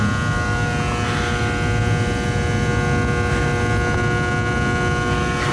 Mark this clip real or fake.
real